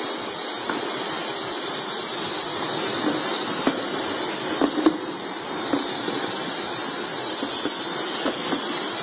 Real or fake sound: real